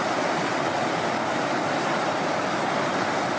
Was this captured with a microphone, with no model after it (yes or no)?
yes